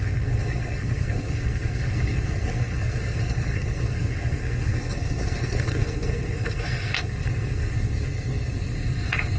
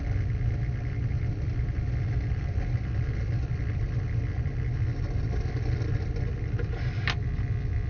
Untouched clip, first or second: second